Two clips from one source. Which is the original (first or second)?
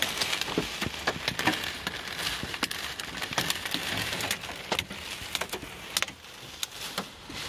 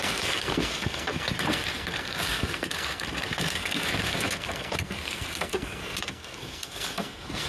first